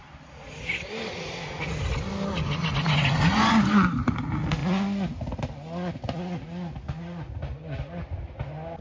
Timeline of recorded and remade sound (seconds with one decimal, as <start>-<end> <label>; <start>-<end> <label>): 0.0-8.8 recorded